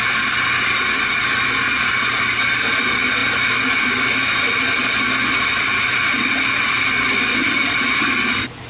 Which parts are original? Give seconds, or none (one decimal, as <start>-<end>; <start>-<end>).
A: 0.0-7.4; 8.0-8.7